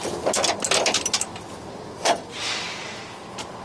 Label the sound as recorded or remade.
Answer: recorded